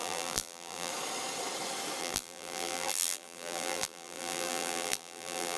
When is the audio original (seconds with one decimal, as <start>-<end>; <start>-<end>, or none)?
0.9-2.0